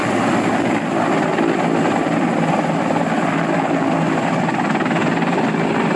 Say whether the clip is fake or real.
real